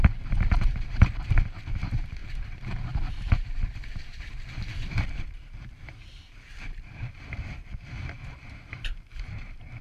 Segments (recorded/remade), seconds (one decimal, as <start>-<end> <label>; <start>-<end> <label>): 0.0-9.8 remade